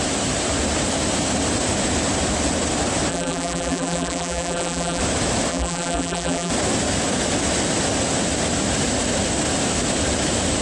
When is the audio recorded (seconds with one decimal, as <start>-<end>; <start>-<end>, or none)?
0.0-3.1; 5.0-5.5; 6.5-10.6